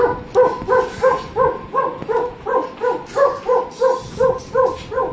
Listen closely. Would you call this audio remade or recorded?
recorded